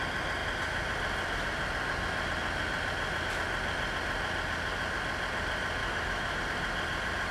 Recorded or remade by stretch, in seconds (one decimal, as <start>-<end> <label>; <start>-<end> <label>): 0.0-5.8 recorded; 5.8-6.4 remade; 6.4-7.3 recorded